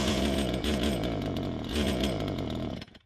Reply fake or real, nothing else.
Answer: fake